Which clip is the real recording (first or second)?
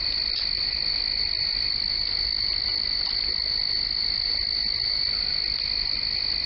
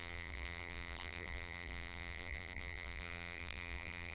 first